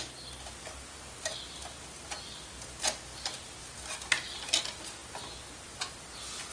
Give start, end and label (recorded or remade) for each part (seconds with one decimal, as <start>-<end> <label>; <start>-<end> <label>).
0.0-6.5 recorded